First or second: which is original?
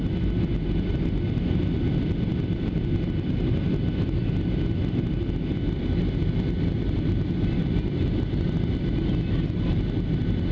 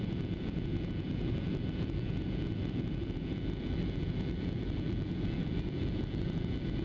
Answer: first